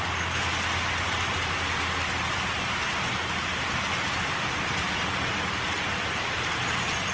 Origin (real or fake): real